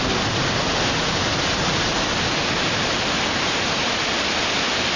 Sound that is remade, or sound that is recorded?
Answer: recorded